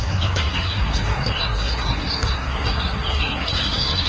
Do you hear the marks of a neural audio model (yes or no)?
yes